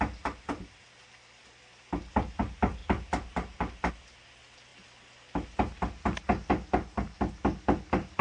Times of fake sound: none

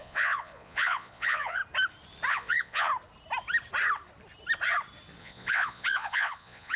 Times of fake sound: 0.0-1.6 (vocoder, Vocos); 2.3-2.9; 5.2-6.8